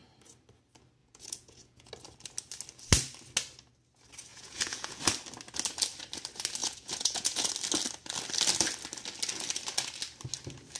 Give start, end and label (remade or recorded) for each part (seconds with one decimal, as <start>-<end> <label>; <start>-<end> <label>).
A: 0.0-1.0 recorded; 1.0-1.9 remade; 1.9-4.3 recorded; 4.3-5.0 remade; 5.0-6.6 recorded; 6.6-7.5 remade; 7.5-10.8 recorded